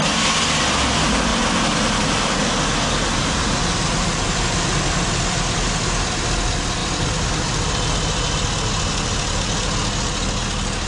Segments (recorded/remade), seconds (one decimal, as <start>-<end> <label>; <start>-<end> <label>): 0.0-3.4 recorded; 3.4-4.4 remade; 4.4-10.9 recorded